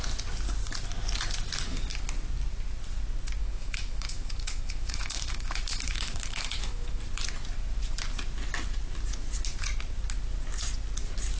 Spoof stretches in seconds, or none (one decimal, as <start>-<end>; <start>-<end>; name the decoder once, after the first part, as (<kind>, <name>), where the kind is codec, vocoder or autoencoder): 3.4-7.0 (autoencoder, DAC-VAE)